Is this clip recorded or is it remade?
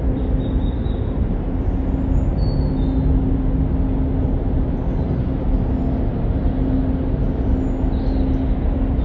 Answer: recorded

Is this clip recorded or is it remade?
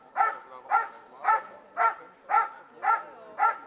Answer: recorded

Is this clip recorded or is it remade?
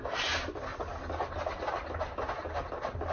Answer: recorded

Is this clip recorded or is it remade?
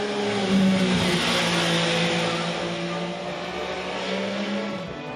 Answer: recorded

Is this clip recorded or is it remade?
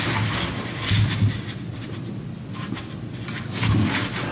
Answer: recorded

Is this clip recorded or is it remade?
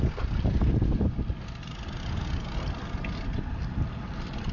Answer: recorded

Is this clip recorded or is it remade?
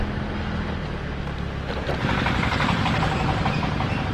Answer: recorded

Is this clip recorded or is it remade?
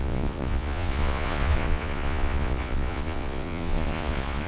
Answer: remade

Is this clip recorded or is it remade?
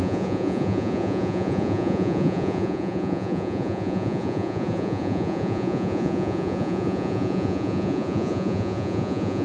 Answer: remade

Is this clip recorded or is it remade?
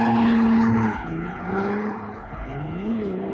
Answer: remade